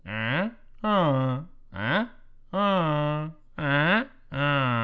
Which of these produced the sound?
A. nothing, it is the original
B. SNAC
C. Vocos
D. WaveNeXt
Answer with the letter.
A